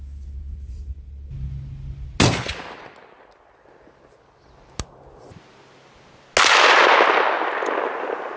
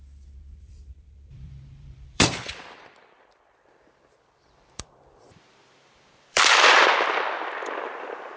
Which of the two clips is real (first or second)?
first